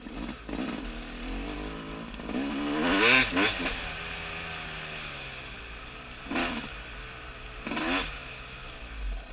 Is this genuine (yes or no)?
yes